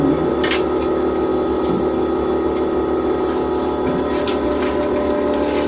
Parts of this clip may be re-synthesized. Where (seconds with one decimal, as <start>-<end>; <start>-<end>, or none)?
none